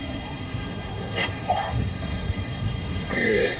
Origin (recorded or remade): remade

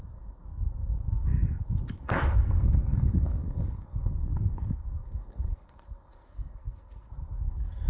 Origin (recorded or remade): remade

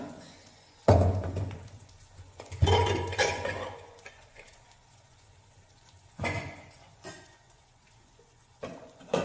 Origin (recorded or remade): remade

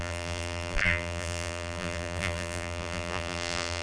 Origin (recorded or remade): remade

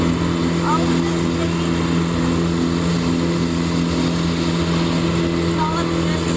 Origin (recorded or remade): recorded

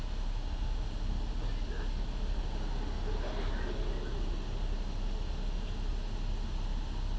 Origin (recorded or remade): recorded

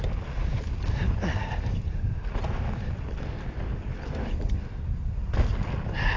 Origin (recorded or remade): recorded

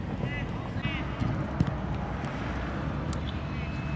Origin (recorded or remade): recorded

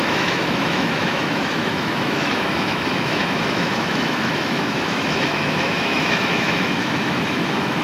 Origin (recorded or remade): remade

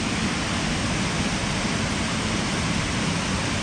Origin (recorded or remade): recorded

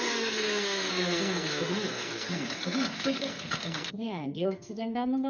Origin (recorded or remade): remade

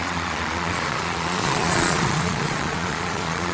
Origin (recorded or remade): remade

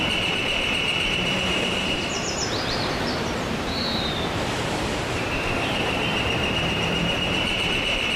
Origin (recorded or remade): remade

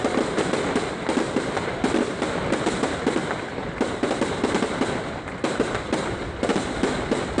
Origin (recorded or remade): recorded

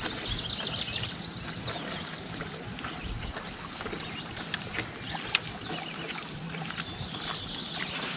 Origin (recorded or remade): recorded